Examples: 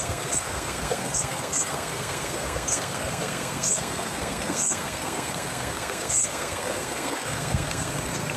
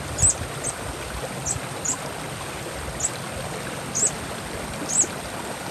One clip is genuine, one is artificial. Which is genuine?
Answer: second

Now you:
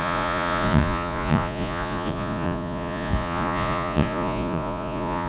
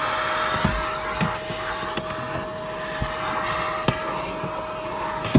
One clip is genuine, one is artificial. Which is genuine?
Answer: second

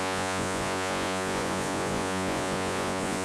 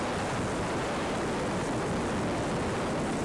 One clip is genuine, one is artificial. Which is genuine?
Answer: second